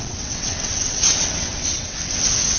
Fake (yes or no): yes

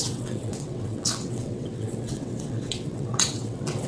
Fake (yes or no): yes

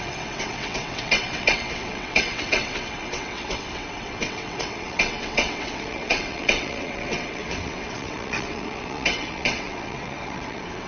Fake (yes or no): yes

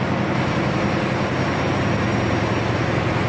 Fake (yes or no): no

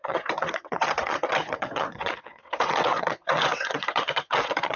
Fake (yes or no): yes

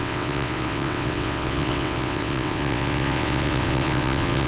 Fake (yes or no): yes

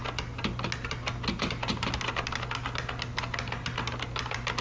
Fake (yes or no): no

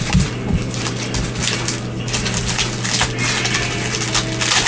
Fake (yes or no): no